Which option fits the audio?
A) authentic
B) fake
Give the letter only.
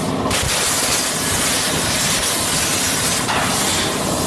B